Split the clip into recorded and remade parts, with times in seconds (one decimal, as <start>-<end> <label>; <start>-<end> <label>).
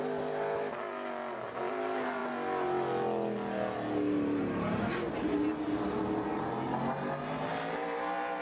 0.0-8.4 recorded